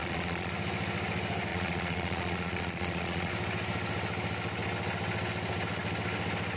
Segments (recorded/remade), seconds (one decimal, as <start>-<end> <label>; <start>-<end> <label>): 0.0-0.5 remade; 0.5-1.5 recorded; 1.5-3.3 remade; 3.3-6.6 recorded